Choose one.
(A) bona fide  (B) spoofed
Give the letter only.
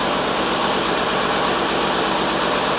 B